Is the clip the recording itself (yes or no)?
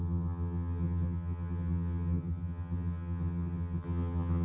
no